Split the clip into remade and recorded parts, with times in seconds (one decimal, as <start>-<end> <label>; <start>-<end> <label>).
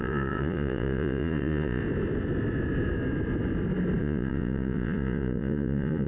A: 0.0-1.8 remade; 1.8-4.0 recorded; 4.0-6.1 remade